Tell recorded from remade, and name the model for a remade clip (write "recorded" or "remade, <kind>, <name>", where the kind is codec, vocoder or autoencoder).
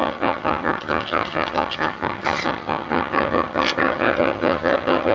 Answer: remade, vocoder, HiFi-GAN